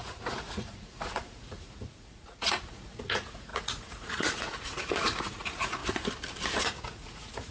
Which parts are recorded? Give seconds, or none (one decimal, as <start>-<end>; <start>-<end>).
5.8-6.6